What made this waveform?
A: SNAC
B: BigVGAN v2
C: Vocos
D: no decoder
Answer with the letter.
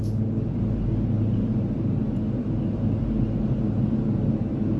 D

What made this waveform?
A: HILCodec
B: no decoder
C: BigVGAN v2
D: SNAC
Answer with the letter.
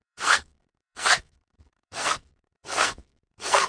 D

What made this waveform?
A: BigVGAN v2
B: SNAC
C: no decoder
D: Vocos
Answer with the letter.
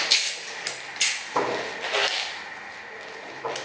C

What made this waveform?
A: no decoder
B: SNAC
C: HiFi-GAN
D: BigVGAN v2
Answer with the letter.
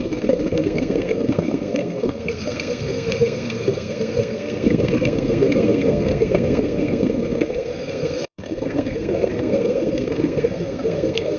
B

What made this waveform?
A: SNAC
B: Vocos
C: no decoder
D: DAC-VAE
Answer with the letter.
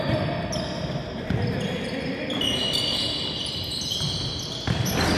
C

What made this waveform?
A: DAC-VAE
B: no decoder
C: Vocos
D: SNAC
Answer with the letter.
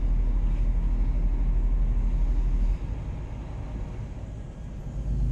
B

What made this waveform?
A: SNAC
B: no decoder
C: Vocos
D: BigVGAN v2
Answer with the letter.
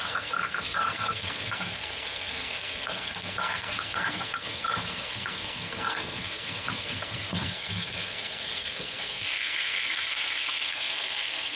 A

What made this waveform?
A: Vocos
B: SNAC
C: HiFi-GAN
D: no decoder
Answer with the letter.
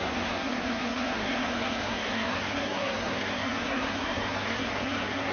B